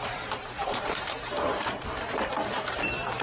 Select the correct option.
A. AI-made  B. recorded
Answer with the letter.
A